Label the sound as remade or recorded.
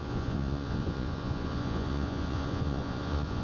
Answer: remade